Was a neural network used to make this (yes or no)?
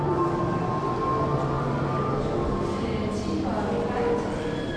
no